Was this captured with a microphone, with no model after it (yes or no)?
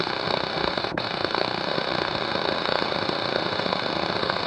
no